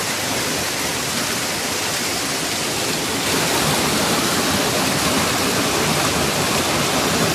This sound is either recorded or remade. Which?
recorded